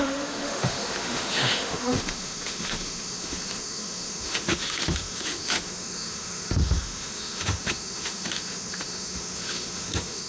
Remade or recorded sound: remade